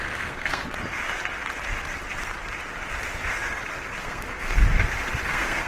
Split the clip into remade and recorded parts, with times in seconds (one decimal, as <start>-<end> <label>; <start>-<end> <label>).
0.0-0.6 remade; 0.6-4.0 recorded; 4.0-4.6 remade; 4.6-5.3 recorded; 5.3-5.7 remade

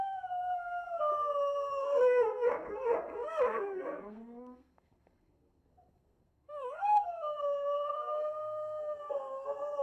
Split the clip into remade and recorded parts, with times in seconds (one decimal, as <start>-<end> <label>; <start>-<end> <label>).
0.0-1.1 remade; 1.1-1.8 recorded; 1.8-9.8 remade

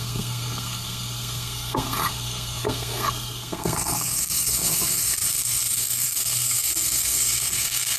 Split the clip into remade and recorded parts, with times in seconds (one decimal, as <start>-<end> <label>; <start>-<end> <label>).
0.0-8.0 remade

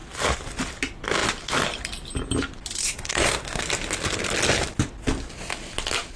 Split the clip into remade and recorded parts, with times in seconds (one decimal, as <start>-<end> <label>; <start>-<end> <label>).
0.0-2.8 recorded; 2.8-3.6 remade; 3.6-6.2 recorded

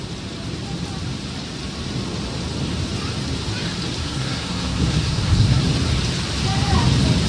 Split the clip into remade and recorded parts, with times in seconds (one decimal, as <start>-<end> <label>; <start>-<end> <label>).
0.0-4.0 recorded; 4.0-5.6 remade; 5.6-7.3 recorded

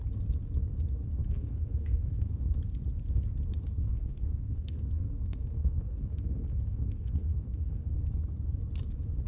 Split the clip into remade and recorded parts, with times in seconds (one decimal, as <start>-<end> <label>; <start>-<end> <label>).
0.0-1.2 recorded; 1.2-2.3 remade; 2.3-3.9 recorded; 3.9-8.1 remade; 8.1-9.3 recorded